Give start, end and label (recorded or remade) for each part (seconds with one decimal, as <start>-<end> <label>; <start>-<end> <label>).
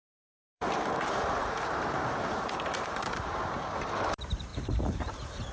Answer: 0.0-5.5 remade